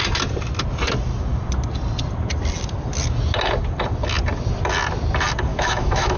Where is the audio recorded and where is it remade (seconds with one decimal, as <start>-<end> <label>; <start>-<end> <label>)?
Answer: 0.0-5.5 recorded; 5.5-6.2 remade